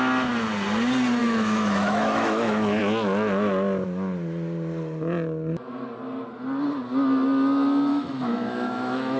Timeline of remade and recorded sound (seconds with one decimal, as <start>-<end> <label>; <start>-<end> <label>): 0.0-1.2 recorded; 1.2-2.8 remade; 2.8-7.9 recorded; 7.9-9.2 remade